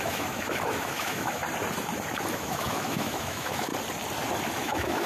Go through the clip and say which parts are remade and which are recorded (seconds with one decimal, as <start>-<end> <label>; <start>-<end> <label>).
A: 0.0-1.4 remade; 1.4-2.3 recorded; 2.3-3.7 remade; 3.7-4.6 recorded; 4.6-5.1 remade